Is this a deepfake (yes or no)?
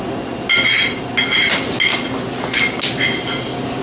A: no